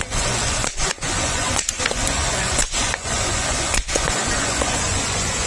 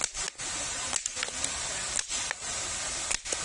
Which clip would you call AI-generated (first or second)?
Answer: first